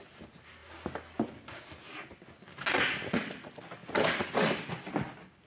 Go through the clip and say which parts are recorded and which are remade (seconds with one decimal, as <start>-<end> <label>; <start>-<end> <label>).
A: 0.0-5.5 recorded